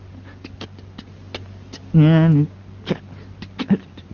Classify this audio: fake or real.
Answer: real